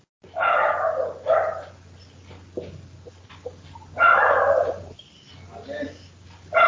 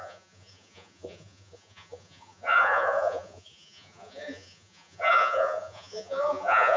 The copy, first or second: second